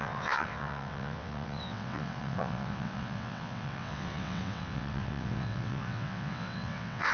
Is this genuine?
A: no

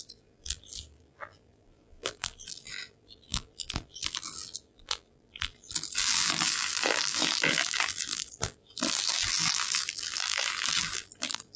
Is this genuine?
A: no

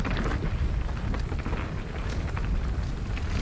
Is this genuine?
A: yes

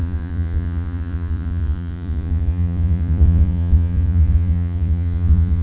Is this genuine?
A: no